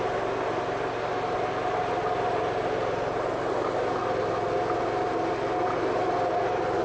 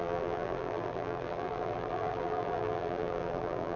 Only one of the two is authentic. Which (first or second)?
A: first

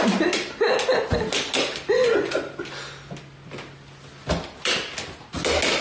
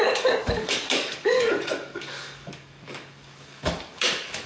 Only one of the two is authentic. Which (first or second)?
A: first